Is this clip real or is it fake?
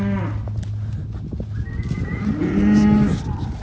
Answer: real